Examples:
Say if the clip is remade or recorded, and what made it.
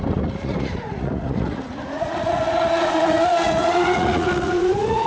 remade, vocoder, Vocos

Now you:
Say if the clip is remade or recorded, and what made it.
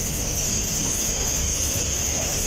remade, autoencoder, DAC-VAE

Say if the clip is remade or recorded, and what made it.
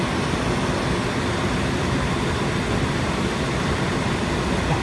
recorded